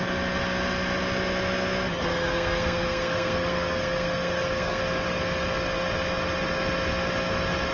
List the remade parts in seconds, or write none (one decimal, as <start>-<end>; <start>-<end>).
2.0-4.8